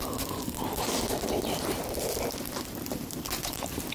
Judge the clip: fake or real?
real